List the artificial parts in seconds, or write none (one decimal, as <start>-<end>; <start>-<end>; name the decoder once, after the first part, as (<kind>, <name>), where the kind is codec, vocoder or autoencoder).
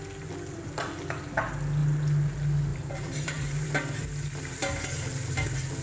2.7-3.7 (vocoder, BigVGAN v2)